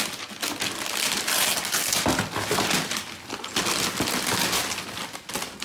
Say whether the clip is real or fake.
real